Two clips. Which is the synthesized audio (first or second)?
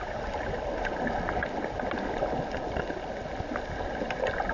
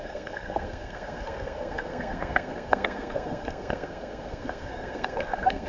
second